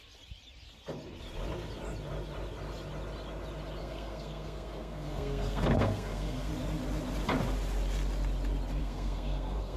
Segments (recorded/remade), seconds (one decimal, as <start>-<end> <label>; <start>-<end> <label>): 0.0-3.8 recorded; 3.8-6.5 remade; 6.5-8.8 recorded; 8.8-9.8 remade